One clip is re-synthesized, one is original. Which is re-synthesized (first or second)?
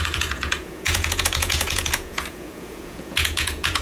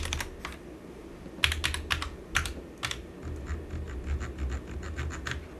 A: first